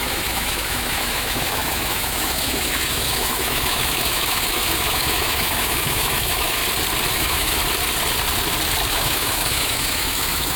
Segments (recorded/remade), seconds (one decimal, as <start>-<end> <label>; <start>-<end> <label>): 0.0-6.6 remade; 6.6-7.1 recorded; 7.1-7.6 remade; 7.6-8.9 recorded; 8.9-10.6 remade